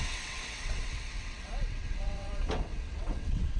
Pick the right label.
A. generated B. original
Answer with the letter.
A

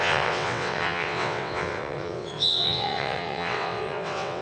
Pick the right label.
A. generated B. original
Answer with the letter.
A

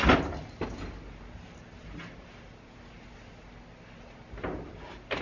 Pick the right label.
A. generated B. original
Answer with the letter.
B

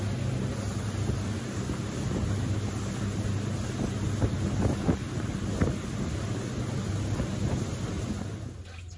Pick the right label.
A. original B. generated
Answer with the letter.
A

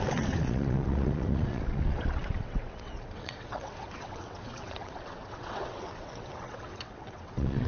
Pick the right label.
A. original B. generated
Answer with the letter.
B